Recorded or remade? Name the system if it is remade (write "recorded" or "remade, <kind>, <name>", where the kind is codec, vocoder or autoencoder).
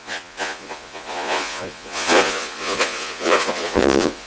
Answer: remade, vocoder, Vocos